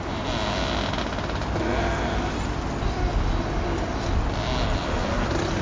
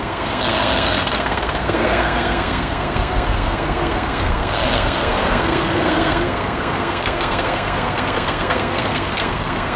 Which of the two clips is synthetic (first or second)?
second